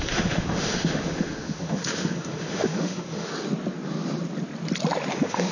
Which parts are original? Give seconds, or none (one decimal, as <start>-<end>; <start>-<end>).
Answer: 3.3-5.1